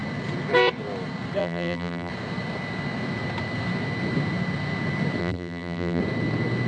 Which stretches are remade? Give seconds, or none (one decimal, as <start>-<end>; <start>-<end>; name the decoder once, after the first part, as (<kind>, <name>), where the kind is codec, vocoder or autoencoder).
1.4-2.1 (vocoder, BigVGAN v2); 5.2-6.0